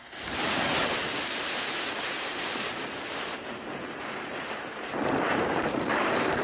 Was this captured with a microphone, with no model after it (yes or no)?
no